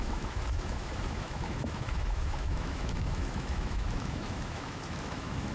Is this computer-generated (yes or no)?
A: yes